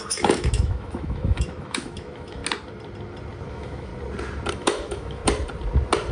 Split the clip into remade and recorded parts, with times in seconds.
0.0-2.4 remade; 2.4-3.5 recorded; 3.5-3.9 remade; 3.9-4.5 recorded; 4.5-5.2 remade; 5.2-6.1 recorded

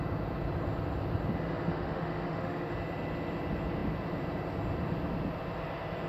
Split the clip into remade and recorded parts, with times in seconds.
0.0-1.7 recorded; 1.7-2.7 remade; 2.7-6.1 recorded

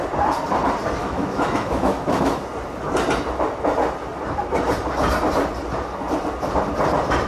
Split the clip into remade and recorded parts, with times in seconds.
0.0-1.0 recorded; 1.0-2.4 remade; 2.4-7.3 recorded